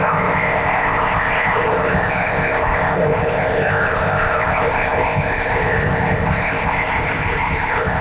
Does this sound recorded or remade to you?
remade